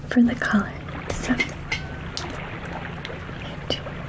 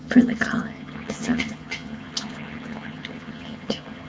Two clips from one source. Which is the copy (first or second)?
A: second